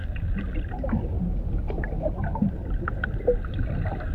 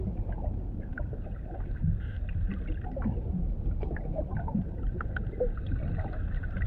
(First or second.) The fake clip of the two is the second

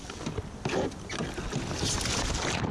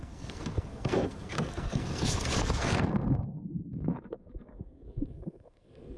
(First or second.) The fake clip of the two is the second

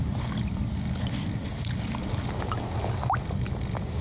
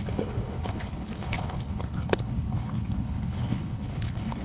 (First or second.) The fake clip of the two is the second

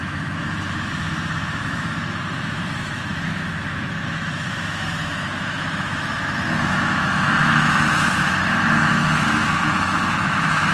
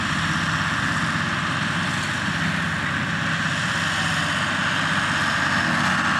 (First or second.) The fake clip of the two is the first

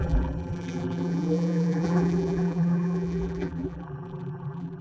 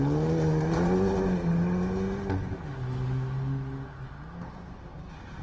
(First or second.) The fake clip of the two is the first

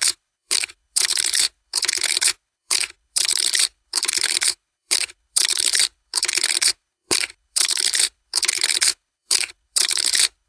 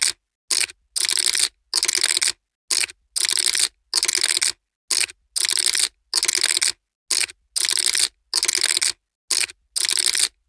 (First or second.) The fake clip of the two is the first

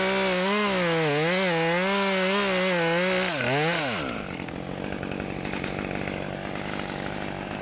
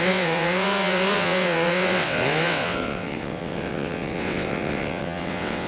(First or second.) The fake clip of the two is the second